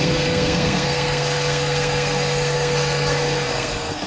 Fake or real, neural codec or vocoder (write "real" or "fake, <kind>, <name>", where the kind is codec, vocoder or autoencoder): fake, codec, SNAC